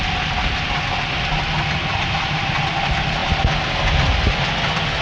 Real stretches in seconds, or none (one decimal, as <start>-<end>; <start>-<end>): 0.0-5.0